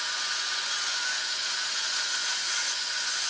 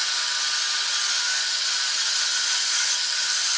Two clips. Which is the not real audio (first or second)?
first